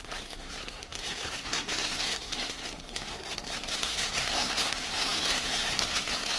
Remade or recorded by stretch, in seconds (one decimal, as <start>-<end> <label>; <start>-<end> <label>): 0.0-6.4 remade